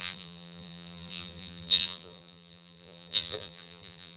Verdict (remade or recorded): remade